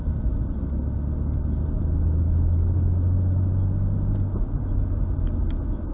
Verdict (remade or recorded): recorded